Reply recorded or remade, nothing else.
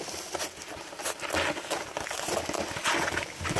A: recorded